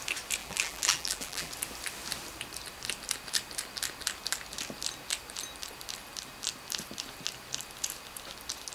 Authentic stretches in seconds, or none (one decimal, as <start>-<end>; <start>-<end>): 0.0-0.4; 1.5-8.7